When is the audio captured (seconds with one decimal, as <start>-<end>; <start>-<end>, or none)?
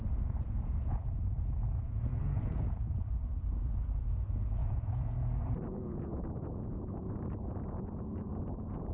none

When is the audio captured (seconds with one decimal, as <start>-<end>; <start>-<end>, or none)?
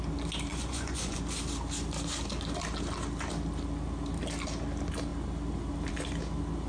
0.0-0.5; 1.2-6.7